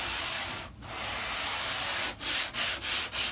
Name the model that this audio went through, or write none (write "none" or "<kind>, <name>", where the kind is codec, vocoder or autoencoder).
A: none